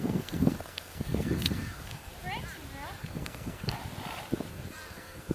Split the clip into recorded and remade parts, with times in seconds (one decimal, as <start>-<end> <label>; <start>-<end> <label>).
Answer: 0.0-2.1 remade; 2.1-3.0 recorded; 3.0-3.8 remade; 3.8-4.5 recorded; 4.5-5.3 remade